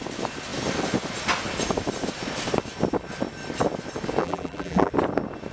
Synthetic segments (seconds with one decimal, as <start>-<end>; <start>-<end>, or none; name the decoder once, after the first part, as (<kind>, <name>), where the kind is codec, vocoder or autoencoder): 4.2-4.9 (vocoder, BigVGAN v2)

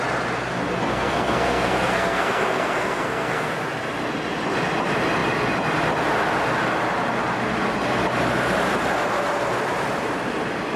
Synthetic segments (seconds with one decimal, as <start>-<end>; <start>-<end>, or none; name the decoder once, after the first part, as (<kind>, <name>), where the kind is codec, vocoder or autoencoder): 0.9-3.5 (codec, SNAC)

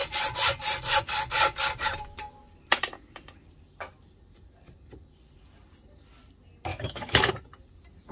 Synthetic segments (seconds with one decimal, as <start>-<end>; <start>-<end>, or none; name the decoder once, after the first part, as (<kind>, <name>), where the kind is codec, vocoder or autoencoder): 6.7-7.3 (autoencoder, DAC-VAE)